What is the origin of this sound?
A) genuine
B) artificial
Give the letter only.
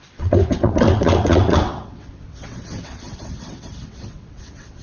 B